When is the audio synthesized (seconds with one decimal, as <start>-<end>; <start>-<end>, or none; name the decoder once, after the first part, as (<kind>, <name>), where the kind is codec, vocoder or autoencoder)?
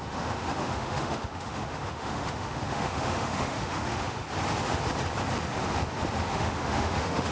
0.0-4.2 (autoencoder, DAC-VAE); 6.3-7.3